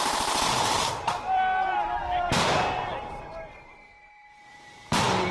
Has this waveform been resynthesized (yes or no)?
yes